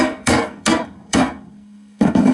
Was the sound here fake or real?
fake